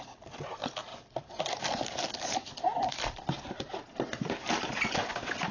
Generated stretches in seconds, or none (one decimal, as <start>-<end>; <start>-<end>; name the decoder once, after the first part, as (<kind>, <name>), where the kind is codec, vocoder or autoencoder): 0.9-2.1 (vocoder, BigVGAN v2); 4.1-5.0